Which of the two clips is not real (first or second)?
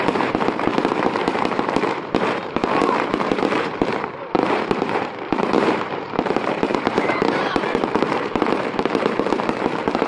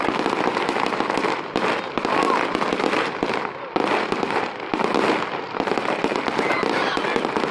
first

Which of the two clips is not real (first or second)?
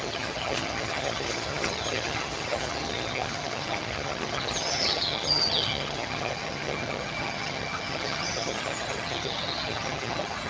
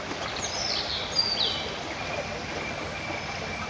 first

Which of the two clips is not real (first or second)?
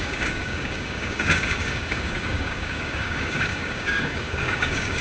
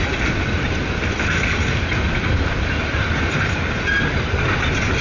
first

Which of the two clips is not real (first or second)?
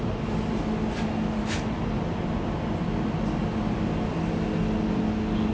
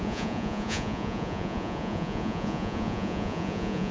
second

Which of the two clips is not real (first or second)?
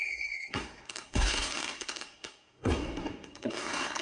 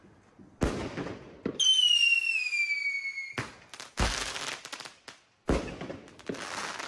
first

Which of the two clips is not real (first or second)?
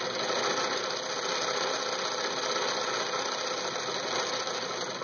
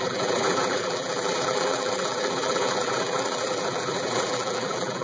second